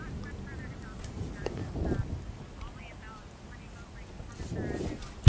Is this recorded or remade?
recorded